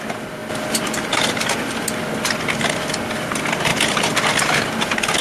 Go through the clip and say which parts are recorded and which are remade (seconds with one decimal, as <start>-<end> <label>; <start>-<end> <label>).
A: 0.0-5.2 recorded